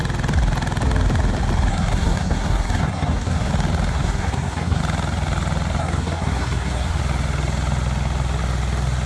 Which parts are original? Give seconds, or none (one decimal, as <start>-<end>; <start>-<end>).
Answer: 0.0-1.7; 3.5-3.9; 4.8-5.8; 7.0-9.1